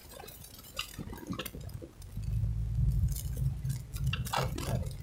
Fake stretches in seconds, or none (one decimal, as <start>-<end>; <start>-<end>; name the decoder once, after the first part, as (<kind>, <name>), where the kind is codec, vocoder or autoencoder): 0.0-1.4 (vocoder, BigVGAN v2)